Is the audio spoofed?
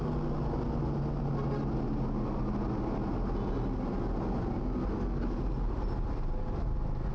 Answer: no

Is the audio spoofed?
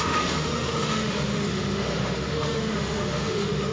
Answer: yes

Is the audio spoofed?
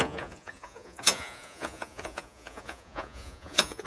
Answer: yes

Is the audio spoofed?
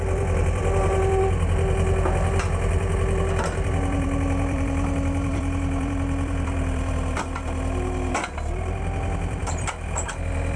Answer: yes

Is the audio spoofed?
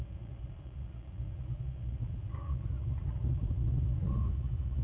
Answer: yes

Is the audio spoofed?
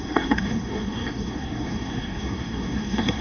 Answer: yes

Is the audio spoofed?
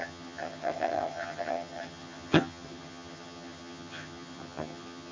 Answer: yes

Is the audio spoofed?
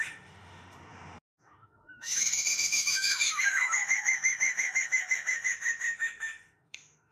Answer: yes